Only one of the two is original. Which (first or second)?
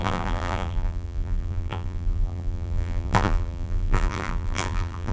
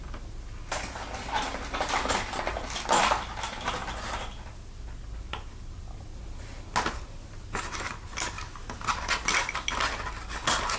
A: second